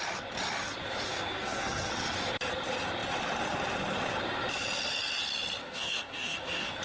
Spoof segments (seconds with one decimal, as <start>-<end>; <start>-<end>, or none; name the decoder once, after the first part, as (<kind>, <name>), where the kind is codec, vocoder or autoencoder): 1.1-1.9 (codec, SNAC); 5.6-6.8